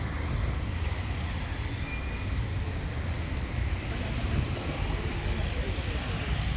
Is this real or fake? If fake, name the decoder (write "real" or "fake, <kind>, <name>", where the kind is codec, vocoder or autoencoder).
real